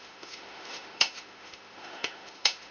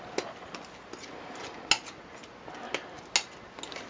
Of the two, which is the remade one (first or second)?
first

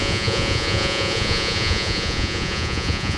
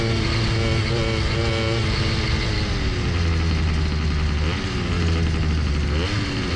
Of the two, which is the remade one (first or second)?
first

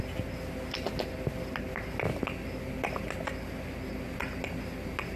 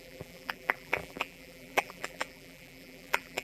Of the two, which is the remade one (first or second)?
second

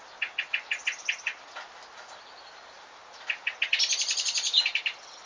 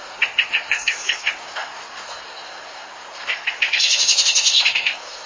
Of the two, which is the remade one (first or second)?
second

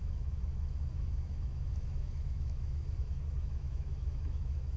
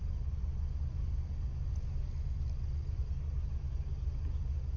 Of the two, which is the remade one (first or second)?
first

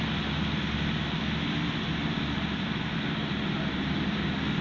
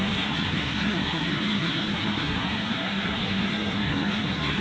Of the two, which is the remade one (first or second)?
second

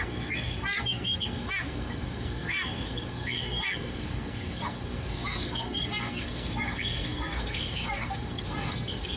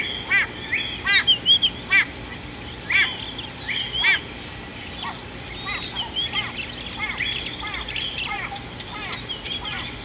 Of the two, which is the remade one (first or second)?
first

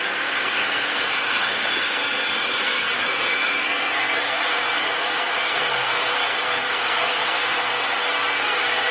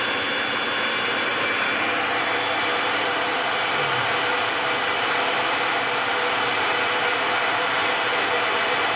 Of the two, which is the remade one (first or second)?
first